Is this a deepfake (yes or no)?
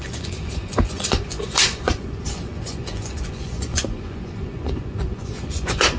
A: yes